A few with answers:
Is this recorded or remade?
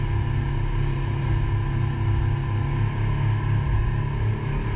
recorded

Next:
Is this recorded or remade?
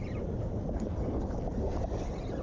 recorded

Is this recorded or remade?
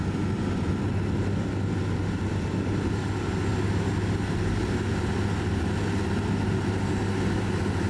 recorded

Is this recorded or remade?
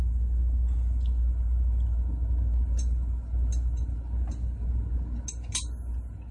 recorded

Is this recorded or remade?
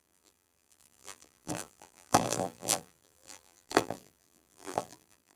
remade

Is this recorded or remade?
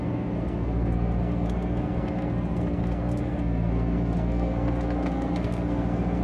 remade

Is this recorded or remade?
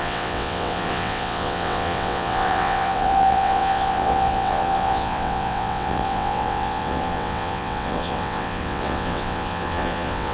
remade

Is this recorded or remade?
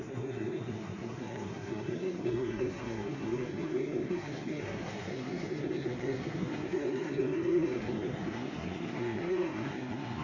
remade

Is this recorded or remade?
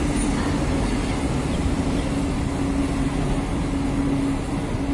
recorded